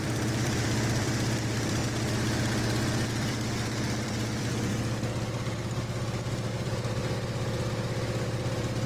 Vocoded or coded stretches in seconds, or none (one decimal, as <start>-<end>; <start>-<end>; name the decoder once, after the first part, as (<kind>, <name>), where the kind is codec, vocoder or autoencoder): 0.0-1.8 (vocoder, BigVGAN v2); 3.1-4.7; 6.5-7.0

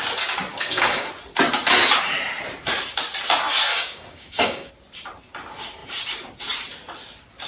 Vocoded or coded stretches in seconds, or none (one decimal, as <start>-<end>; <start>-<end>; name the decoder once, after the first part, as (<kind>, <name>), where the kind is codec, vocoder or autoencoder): 0.5-1.1 (codec, DAC); 3.7-4.7

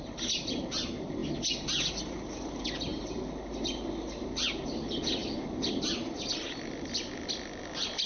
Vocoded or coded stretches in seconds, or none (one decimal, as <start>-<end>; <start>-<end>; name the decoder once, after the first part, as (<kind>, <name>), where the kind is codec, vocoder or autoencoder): none

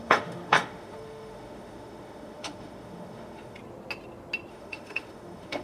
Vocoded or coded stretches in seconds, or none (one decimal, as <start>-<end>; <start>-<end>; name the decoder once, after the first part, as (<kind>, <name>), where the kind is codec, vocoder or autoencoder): 0.0-3.6 (autoencoder, DAC-VAE); 4.5-5.6

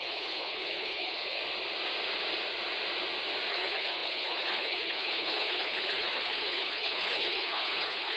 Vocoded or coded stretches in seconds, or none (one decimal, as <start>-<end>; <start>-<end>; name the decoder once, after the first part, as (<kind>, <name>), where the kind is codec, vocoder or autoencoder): 0.0-1.4 (codec, HILCodec); 3.5-8.2

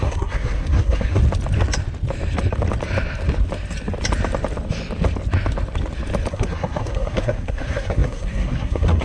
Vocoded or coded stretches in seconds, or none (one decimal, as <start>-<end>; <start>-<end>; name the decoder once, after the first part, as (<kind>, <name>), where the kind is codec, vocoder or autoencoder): 0.0-1.2 (codec, SNAC); 6.3-9.0